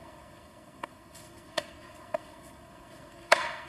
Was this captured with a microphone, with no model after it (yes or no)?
no